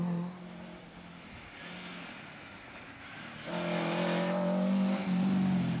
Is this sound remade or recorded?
recorded